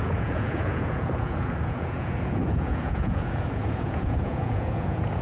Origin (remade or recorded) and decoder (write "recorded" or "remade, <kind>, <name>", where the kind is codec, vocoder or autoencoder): remade, vocoder, Vocos